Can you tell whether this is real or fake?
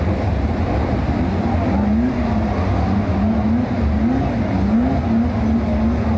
real